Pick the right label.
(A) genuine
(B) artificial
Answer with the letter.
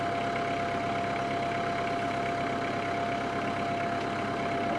A